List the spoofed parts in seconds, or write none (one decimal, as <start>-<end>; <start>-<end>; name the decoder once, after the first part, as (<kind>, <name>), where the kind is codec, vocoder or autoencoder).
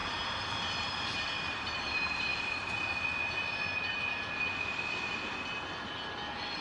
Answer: 0.0-2.3 (vocoder, BigVGAN v2)